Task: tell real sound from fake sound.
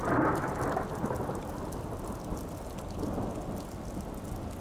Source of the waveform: real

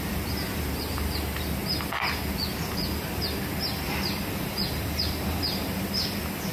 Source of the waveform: real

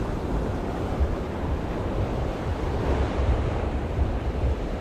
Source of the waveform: fake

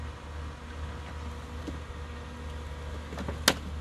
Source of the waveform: real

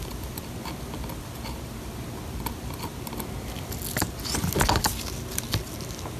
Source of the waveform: real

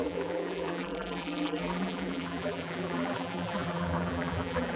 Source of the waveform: fake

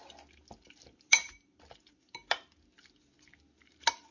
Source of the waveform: real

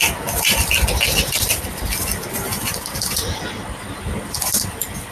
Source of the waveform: real